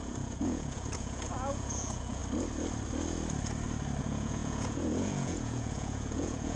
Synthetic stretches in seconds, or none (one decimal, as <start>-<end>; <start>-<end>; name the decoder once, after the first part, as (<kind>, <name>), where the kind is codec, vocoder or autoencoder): 0.0-2.2 (vocoder, Vocos); 4.0-6.6